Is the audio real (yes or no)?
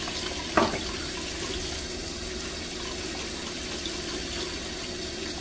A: yes